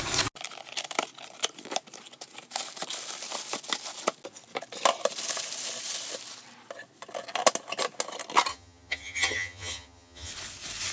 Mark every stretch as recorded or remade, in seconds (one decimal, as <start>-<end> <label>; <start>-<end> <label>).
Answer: 0.0-8.5 recorded; 8.5-10.3 remade; 10.3-10.9 recorded

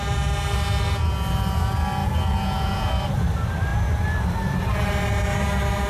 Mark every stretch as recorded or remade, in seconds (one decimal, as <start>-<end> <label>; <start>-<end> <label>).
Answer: 0.0-2.0 recorded; 2.0-2.9 remade; 2.9-5.9 recorded

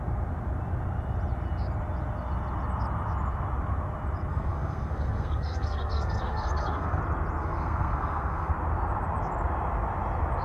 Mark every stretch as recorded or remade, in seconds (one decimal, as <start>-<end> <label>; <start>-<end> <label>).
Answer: 0.0-4.3 recorded; 4.3-7.0 remade; 7.0-7.4 recorded; 7.4-8.5 remade; 8.5-10.4 recorded

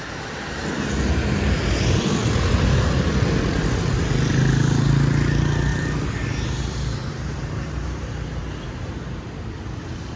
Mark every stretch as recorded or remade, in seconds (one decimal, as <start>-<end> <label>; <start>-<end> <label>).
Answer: 0.0-5.7 recorded; 5.7-9.1 remade; 9.1-10.2 recorded

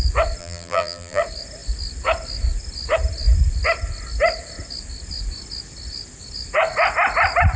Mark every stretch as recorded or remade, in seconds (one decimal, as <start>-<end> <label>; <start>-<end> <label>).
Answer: 0.0-0.4 recorded; 0.4-1.2 remade; 1.2-7.6 recorded

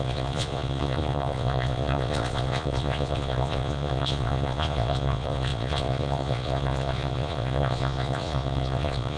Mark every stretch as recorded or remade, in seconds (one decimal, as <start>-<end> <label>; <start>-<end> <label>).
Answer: 0.0-9.2 remade

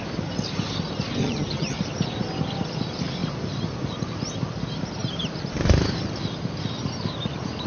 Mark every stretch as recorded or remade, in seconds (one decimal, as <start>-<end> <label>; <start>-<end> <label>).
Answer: 0.0-1.2 recorded; 1.2-1.8 remade; 1.8-7.7 recorded